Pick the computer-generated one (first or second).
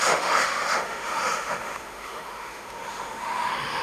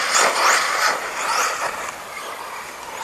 first